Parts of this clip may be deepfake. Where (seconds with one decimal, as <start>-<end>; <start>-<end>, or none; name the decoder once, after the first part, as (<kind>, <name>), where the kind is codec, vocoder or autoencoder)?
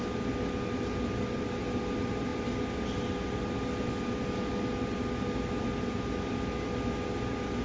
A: none